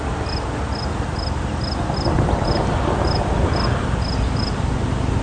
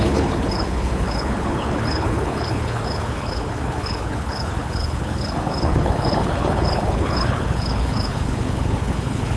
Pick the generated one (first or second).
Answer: second